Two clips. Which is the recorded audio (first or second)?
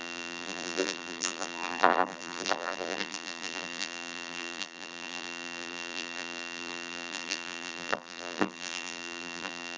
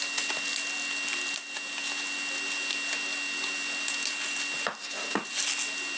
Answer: second